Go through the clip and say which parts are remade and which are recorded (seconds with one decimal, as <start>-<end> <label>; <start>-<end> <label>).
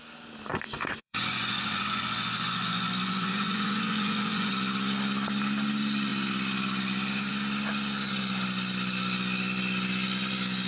0.0-0.5 recorded; 0.5-4.5 remade; 4.5-10.7 recorded